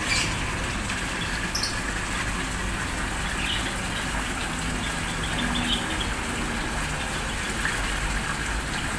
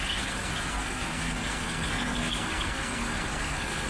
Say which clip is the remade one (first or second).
second